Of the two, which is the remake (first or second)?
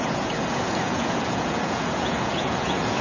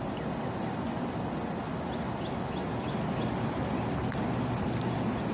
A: first